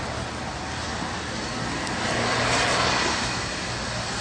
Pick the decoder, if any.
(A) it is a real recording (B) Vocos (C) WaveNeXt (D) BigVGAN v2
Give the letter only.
A